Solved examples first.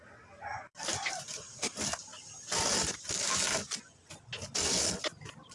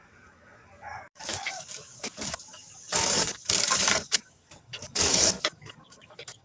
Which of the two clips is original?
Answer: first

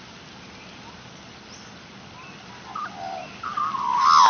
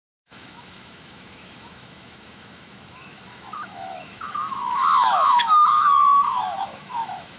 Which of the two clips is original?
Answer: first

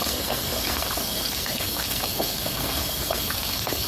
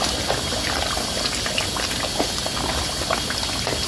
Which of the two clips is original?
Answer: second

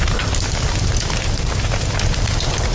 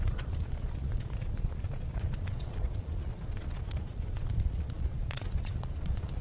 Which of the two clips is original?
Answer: first